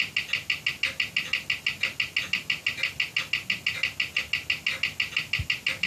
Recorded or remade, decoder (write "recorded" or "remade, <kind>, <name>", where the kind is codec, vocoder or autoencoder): recorded